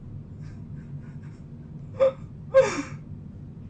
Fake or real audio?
real